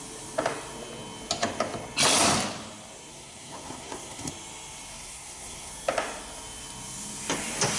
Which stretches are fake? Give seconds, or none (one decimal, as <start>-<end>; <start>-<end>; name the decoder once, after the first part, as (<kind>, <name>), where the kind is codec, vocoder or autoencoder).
3.1-4.3 (codec, SNAC); 4.9-5.7